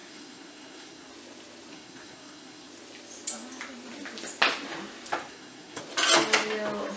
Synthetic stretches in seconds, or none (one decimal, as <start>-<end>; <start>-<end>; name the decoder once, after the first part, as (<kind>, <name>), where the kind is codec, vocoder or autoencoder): 0.0-1.1 (codec, SNAC); 1.7-2.7; 5.3-5.8